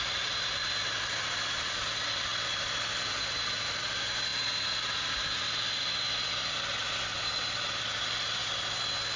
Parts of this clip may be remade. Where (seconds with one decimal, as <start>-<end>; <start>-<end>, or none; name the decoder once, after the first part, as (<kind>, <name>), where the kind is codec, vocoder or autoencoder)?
none